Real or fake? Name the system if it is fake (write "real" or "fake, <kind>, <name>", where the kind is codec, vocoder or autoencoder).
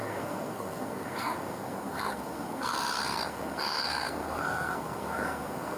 fake, codec, SNAC